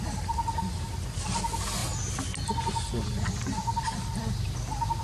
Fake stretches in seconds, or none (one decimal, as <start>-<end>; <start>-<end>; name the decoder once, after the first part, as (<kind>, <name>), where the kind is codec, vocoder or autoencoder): 0.0-1.8 (vocoder, BigVGAN v2); 3.2-5.0